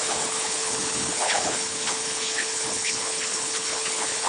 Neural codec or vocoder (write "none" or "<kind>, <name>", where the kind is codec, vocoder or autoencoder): codec, HILCodec